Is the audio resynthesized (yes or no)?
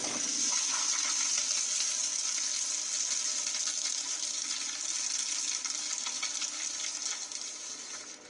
no